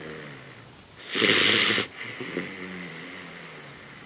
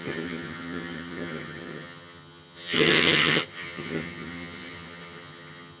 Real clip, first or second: first